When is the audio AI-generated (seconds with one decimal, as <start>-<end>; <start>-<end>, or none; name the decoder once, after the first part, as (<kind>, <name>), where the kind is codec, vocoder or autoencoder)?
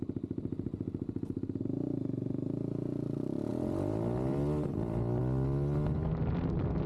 none